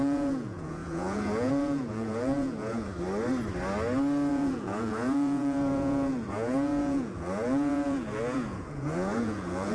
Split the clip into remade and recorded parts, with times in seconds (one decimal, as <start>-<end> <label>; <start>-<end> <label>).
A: 0.0-2.9 remade; 2.9-4.3 recorded; 4.3-9.7 remade